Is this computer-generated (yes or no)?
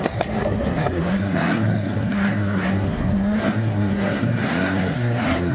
yes